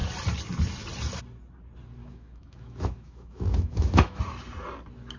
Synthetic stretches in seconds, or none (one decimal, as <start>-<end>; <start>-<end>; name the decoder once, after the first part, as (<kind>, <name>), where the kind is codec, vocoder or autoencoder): 2.0-4.2 (autoencoder, DAC-VAE)